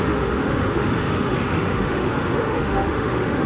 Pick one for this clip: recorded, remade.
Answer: remade